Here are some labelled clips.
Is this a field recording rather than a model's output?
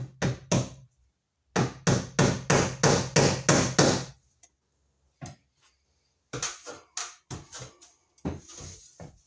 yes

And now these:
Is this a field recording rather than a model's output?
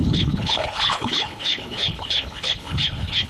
no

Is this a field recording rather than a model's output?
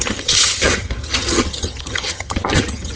no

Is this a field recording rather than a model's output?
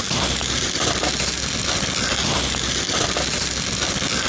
yes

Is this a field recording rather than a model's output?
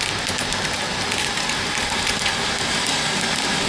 yes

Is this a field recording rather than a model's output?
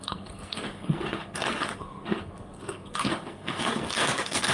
no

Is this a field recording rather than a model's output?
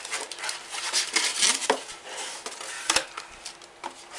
yes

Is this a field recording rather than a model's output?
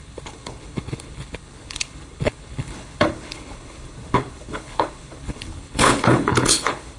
no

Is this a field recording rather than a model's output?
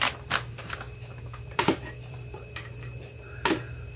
no